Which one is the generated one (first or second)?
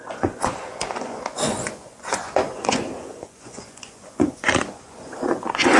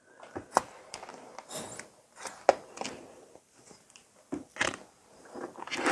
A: first